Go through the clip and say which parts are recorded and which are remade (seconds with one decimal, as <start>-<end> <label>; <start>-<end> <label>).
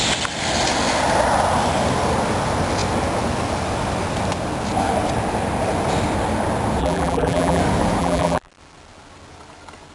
0.0-6.8 recorded; 6.8-7.6 remade; 7.6-8.0 recorded; 8.0-8.5 remade; 8.5-9.9 recorded